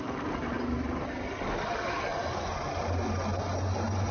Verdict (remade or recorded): recorded